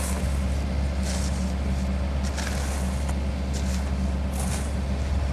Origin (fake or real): real